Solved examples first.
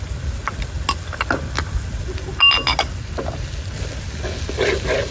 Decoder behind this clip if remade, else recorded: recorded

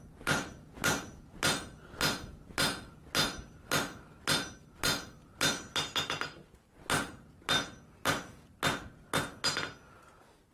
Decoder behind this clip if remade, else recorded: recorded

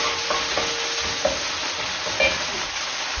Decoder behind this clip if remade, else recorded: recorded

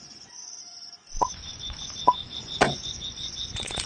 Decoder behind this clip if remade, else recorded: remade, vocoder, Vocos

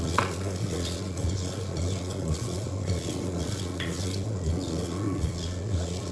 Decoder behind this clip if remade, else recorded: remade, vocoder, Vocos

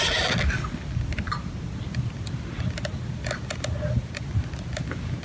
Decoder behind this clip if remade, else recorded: recorded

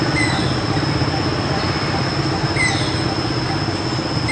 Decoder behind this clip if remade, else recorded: recorded